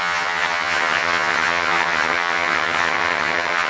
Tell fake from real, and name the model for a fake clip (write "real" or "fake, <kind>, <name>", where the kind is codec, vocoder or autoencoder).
fake, vocoder, HiFi-GAN